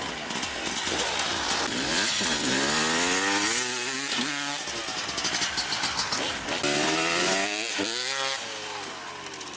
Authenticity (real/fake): real